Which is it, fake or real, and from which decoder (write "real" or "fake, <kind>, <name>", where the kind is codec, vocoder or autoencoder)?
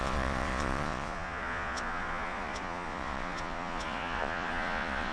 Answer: fake, vocoder, Vocos